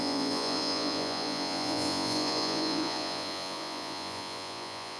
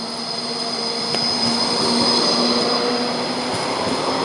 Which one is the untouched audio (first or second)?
second